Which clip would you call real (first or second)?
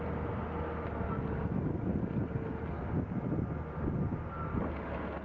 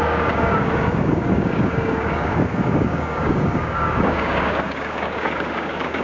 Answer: first